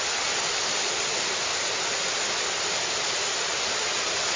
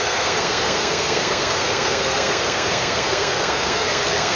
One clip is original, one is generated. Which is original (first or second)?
first